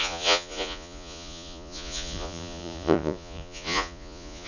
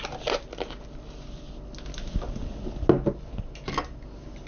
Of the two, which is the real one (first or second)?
second